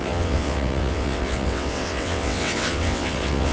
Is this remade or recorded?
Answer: remade